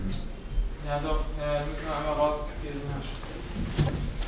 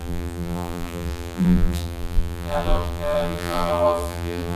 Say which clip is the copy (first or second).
second